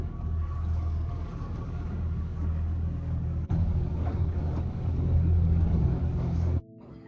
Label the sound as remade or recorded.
remade